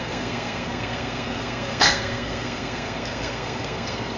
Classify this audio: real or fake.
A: fake